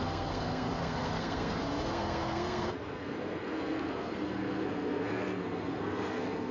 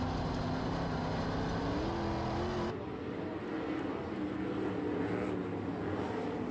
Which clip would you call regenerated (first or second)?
first